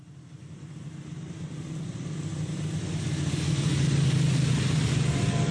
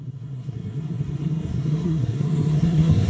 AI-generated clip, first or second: second